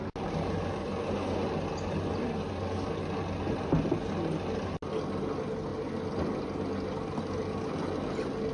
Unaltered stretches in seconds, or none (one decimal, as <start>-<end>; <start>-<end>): 0.0-8.5

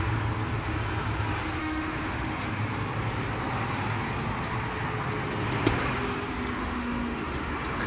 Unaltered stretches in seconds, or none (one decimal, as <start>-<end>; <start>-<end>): 0.0-1.6; 2.6-6.6; 7.5-7.9

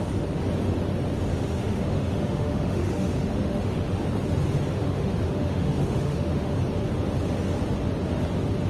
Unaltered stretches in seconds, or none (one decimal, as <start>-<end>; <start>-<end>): 0.0-1.3; 4.0-4.8; 6.6-8.7